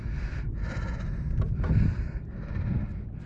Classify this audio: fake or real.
real